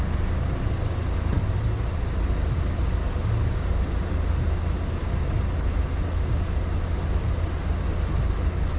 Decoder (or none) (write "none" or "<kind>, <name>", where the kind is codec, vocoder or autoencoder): none